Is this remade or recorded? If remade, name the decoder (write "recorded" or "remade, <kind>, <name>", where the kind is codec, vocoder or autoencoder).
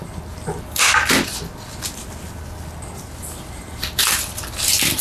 recorded